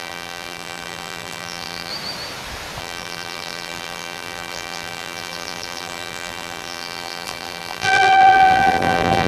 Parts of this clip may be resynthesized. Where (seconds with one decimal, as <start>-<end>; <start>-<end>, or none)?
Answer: 0.0-1.9; 2.8-9.3